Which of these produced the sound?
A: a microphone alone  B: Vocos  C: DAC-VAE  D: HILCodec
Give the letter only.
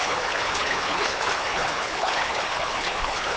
D